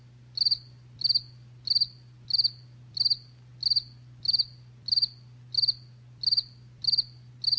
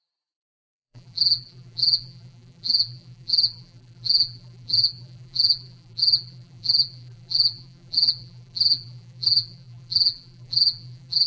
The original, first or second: first